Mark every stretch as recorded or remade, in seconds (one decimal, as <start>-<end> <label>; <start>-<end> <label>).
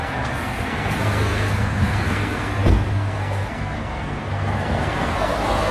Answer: 0.0-5.7 remade